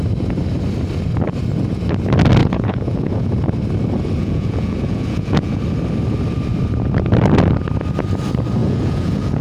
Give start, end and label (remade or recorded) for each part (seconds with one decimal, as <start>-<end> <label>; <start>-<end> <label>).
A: 0.0-2.4 recorded; 2.4-3.3 remade; 3.3-4.2 recorded; 4.2-5.6 remade; 5.6-8.6 recorded; 8.6-9.4 remade